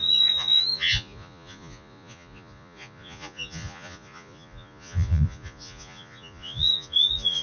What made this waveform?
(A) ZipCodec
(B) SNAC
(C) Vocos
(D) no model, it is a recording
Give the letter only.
C